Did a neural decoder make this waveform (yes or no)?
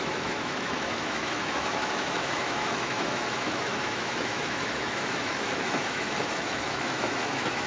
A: yes